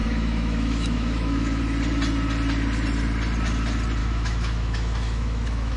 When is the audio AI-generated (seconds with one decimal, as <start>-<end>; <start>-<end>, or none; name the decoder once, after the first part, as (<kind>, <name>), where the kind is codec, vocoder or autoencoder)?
0.0-1.6 (autoencoder, DAC-VAE); 4.0-5.8